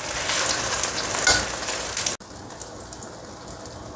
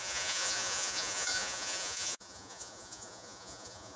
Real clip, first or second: first